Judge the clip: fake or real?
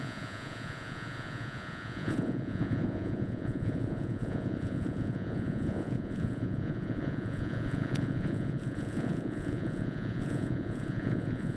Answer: fake